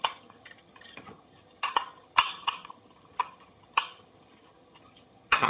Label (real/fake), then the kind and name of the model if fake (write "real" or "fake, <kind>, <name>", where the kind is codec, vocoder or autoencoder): fake, vocoder, HiFi-GAN